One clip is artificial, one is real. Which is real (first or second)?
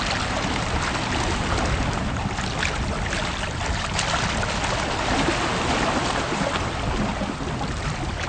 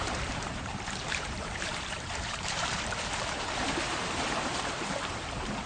first